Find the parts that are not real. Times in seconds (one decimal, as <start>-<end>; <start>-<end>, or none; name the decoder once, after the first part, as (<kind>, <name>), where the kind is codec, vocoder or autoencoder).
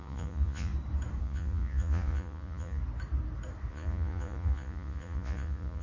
0.0-0.7 (vocoder, Vocos); 1.2-2.8; 3.7-5.8